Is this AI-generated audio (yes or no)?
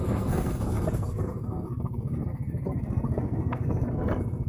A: yes